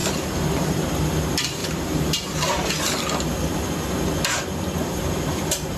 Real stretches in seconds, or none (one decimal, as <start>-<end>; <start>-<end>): 1.2-1.6; 2.7-4.8